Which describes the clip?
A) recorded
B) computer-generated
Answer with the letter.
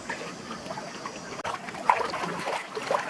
A